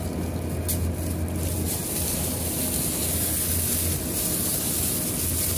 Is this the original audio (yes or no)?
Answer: yes